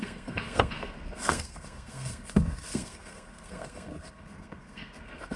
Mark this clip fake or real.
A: fake